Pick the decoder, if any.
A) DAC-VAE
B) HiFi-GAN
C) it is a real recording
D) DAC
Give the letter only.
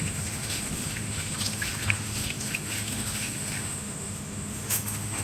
A